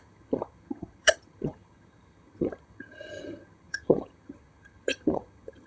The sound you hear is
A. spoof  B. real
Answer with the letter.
A